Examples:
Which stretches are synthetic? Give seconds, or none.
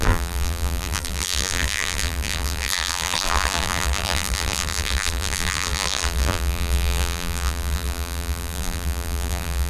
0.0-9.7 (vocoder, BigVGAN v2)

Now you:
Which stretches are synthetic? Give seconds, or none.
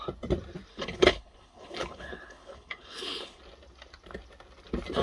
0.7-3.4 (codec, HILCodec)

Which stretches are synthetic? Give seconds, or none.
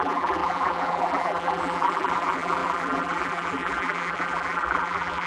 0.0-5.3 (vocoder, BigVGAN v2)